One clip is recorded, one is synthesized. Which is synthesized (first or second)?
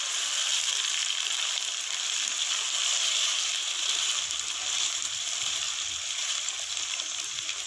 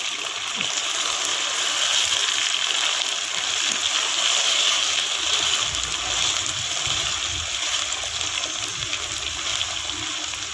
first